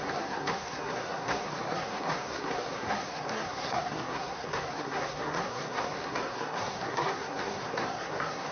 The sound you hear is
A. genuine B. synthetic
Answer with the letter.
B